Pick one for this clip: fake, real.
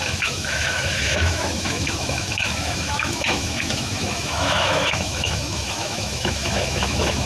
fake